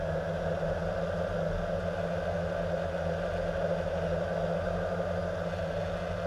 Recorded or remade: recorded